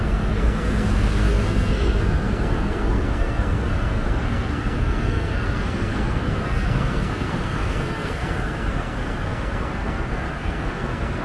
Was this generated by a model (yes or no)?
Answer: yes